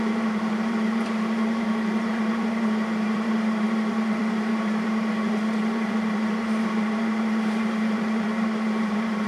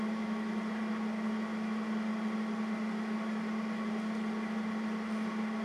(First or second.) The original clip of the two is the second